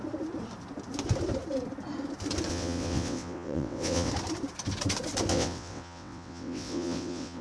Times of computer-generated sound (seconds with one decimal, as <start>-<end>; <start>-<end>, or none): 2.5-4.1; 5.3-7.4

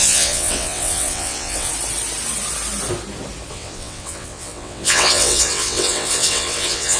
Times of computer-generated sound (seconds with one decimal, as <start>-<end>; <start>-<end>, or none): 0.0-1.7; 3.5-7.0

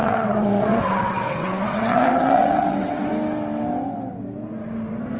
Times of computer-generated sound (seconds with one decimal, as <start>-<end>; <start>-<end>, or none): 0.0-3.1

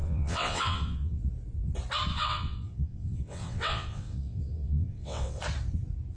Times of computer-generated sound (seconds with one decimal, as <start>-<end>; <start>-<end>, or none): 0.0-1.2; 2.1-5.4

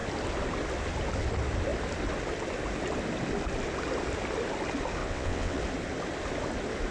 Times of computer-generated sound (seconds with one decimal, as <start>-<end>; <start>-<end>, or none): 5.0-5.6

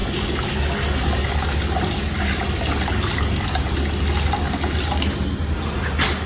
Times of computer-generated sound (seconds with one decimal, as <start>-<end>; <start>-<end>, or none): none